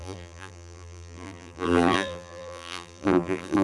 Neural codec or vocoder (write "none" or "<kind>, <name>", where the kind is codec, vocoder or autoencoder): vocoder, BigVGAN v2